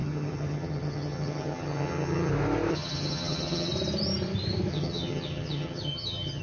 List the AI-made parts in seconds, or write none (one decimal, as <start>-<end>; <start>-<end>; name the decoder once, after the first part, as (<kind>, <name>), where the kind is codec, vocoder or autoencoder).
0.0-2.3 (vocoder, HiFi-GAN); 2.7-3.7; 4.7-6.4